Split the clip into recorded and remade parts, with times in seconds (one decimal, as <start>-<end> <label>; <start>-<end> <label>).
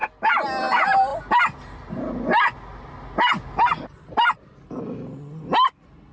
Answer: 0.0-6.1 recorded